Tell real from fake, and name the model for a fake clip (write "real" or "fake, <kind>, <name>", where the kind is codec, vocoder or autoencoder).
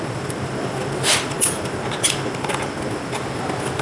fake, vocoder, BigVGAN v2